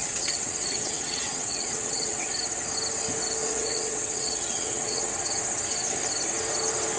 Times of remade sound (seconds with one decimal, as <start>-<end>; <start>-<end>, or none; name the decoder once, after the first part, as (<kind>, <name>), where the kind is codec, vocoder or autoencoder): 0.0-2.3 (vocoder, WaveNeXt); 3.4-5.1